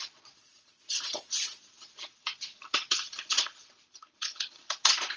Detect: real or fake fake